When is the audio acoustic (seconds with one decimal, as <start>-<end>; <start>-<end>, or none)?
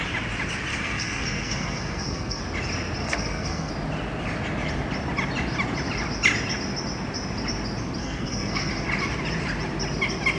0.0-0.7; 2.4-3.0; 3.7-8.0; 8.7-10.4